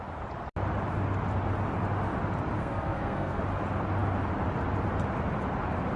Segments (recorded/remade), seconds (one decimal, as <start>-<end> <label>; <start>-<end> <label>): 0.0-2.6 recorded; 2.6-3.4 remade; 3.4-6.0 recorded